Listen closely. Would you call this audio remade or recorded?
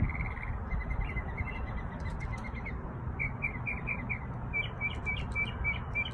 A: recorded